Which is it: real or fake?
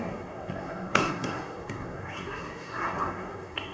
fake